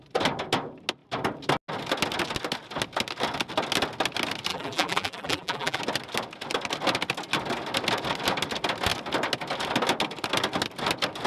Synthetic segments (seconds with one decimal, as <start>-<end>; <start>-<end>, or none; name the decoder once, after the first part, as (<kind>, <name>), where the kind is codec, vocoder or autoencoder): 4.5-5.8 (vocoder, BigVGAN v2)